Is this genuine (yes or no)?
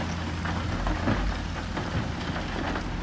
yes